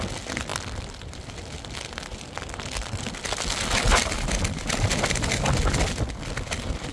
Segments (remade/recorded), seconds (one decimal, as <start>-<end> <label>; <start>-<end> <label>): 0.0-6.9 recorded